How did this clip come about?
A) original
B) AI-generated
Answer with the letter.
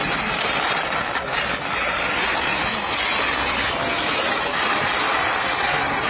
A